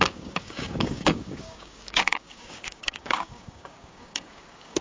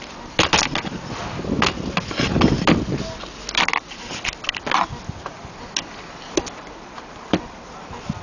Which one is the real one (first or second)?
second